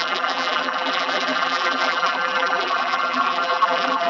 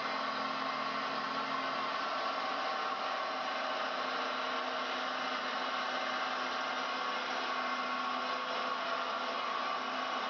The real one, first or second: second